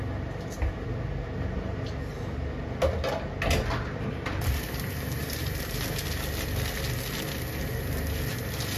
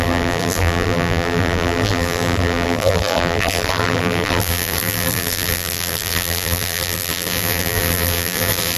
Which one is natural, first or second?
first